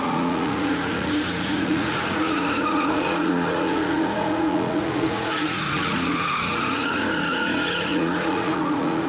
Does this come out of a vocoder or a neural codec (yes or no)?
yes